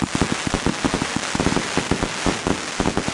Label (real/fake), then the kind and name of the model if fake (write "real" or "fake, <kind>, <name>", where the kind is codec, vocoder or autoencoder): real